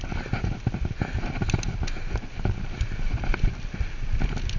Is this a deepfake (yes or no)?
no